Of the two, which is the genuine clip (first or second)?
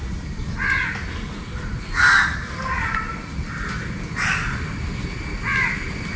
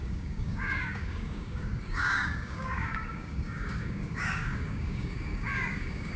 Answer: first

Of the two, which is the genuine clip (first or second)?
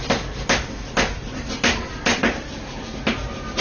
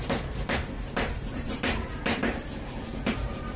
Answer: first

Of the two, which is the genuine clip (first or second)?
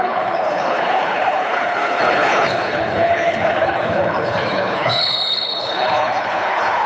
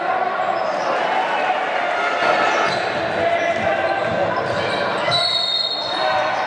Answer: second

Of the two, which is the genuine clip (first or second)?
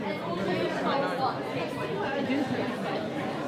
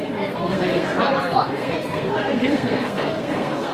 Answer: first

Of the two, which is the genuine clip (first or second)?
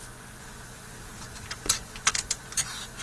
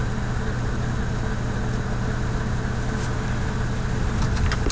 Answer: second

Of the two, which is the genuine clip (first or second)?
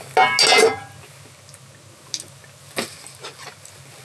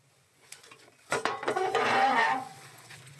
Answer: first